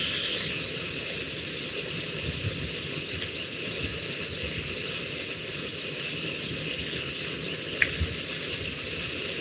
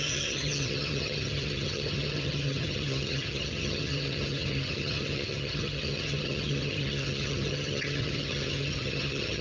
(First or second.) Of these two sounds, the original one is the first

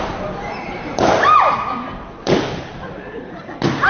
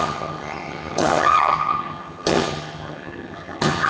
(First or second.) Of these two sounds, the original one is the first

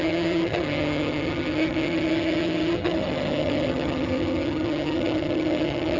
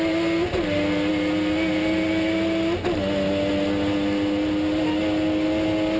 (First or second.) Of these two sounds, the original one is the second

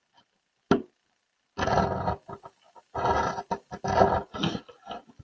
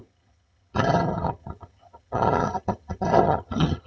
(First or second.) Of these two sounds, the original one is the first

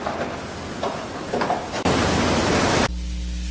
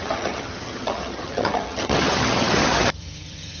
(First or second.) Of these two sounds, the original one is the first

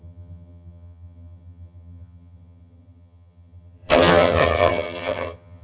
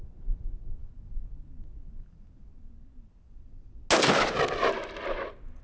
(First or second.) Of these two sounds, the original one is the second